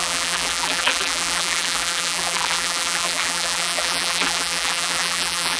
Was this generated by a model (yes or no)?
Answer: yes